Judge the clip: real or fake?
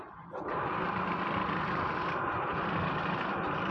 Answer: real